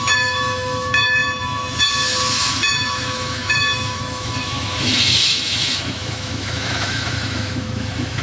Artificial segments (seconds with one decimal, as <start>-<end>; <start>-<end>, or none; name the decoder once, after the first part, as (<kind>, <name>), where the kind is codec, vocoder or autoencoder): 0.0-8.2 (autoencoder, DAC-VAE)